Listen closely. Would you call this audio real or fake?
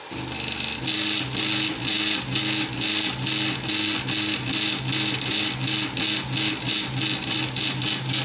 real